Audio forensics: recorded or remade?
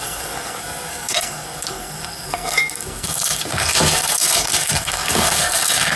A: remade